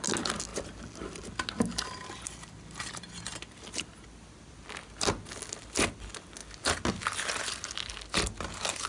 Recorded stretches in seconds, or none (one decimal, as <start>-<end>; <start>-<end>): 0.0-8.9